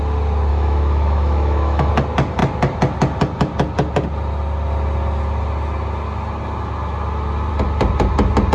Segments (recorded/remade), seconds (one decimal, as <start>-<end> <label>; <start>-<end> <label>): 0.0-0.5 recorded; 0.5-1.9 remade; 1.9-8.5 recorded